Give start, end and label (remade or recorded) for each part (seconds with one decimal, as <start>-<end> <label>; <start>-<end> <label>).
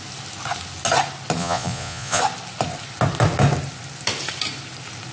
0.0-1.4 recorded; 1.4-2.2 remade; 2.2-5.1 recorded